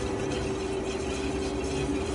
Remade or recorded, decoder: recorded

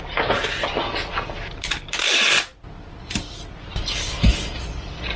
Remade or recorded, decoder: recorded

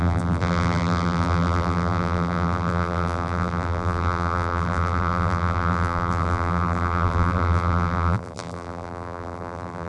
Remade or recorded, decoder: remade, vocoder, BigVGAN v2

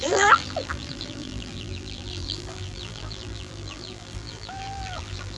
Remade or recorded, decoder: remade, vocoder, BigVGAN v2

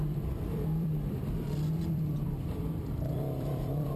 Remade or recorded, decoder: remade, vocoder, BigVGAN v2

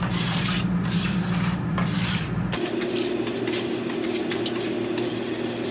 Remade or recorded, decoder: recorded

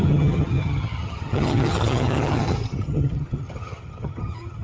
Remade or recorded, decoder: remade, vocoder, HiFi-GAN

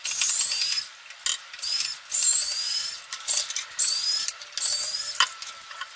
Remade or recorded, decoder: recorded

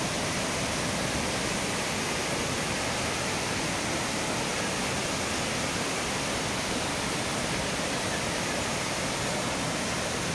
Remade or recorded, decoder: recorded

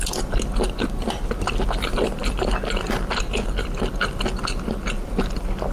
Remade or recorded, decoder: recorded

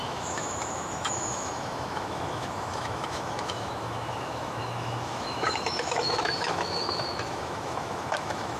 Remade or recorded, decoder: remade, autoencoder, DAC-VAE